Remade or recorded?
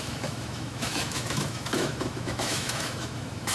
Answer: remade